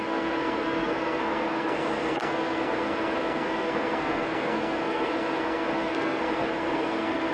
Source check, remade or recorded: remade